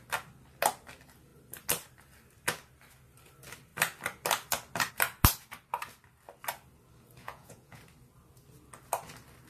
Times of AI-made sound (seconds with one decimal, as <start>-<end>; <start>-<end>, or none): 7.2-7.8